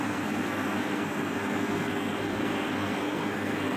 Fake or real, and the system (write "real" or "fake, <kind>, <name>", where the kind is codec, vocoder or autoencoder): fake, codec, SNAC